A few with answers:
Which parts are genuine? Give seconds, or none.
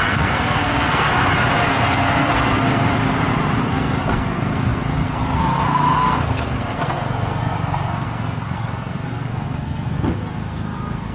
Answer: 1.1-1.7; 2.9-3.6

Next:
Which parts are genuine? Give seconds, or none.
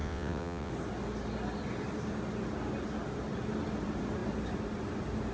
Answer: 0.7-5.3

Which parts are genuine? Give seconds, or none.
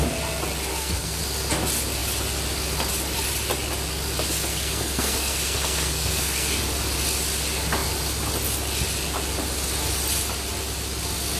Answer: 0.0-0.7; 1.2-4.5; 6.6-11.4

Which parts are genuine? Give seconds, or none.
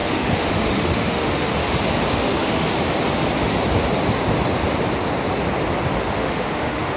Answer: 1.6-2.1; 2.7-5.9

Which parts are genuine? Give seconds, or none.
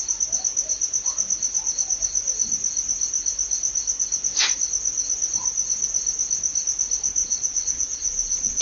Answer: 0.0-7.2